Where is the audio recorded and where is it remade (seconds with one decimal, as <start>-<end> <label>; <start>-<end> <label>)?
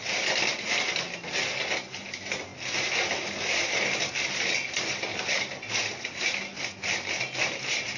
0.0-8.0 recorded